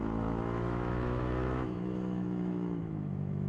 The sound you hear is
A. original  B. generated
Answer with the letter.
B